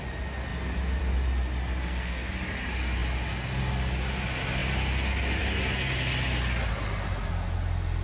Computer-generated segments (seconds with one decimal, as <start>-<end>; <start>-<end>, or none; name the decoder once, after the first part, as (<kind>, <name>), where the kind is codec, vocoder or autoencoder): 1.8-2.3 (codec, SNAC)